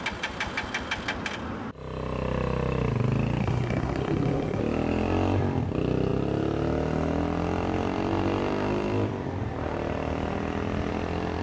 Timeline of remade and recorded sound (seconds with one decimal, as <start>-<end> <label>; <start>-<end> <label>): 0.0-3.4 recorded; 3.4-4.6 remade; 4.6-11.4 recorded